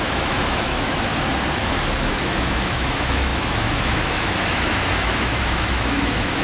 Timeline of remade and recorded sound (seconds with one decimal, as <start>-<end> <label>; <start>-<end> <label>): 0.0-1.1 remade; 1.1-2.1 recorded; 2.1-6.4 remade